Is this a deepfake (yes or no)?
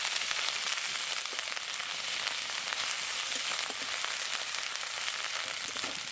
no